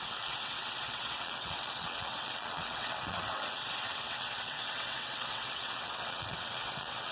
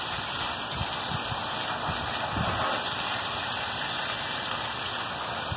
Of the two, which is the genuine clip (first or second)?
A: second